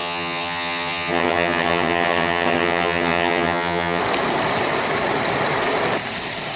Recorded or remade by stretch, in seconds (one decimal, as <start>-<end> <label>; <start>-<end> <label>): 0.0-4.0 remade; 4.0-6.6 recorded

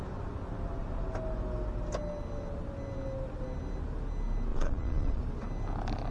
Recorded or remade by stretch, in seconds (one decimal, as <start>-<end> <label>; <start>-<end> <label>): 0.0-4.5 recorded; 4.5-5.2 remade; 5.2-6.1 recorded

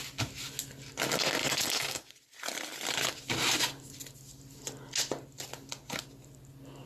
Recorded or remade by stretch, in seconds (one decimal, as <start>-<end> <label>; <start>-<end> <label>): 0.0-1.4 recorded; 1.4-2.1 remade; 2.1-6.9 recorded